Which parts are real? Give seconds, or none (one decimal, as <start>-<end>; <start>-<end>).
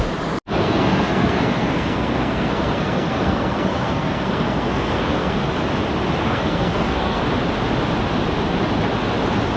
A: 0.0-0.6; 5.5-6.2; 7.2-9.6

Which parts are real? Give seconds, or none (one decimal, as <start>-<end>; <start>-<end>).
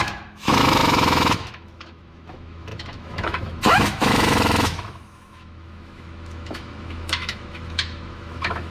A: none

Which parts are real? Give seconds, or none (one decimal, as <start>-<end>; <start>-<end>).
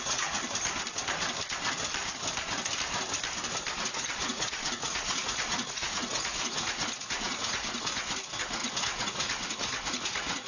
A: 0.4-3.8